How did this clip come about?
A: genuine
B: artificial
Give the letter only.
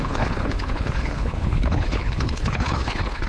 B